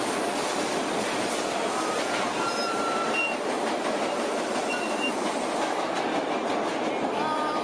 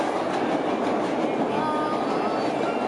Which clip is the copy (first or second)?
first